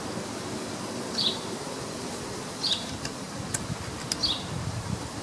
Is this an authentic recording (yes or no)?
no